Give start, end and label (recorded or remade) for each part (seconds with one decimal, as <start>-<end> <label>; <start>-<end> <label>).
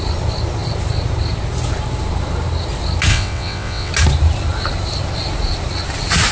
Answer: 0.0-3.1 recorded; 3.1-3.9 remade; 3.9-6.3 recorded